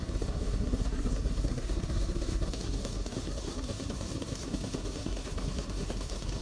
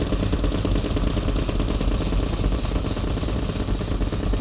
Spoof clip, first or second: first